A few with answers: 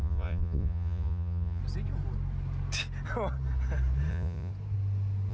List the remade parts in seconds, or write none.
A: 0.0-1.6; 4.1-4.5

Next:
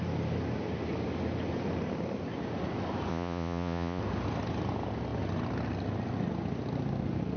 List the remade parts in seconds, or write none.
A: 3.1-4.0

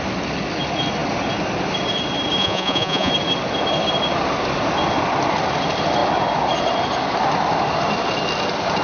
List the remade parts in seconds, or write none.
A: 2.4-3.1

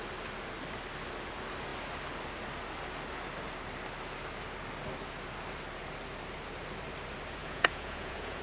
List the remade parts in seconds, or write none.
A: 7.4-8.4

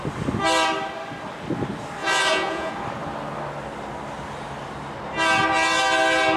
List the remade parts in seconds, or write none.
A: 2.0-2.7

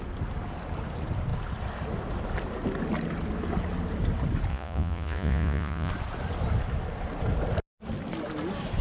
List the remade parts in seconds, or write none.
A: 4.5-5.9

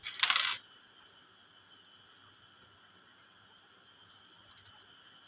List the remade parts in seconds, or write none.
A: none

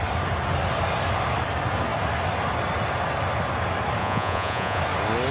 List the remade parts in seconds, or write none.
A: 4.0-4.8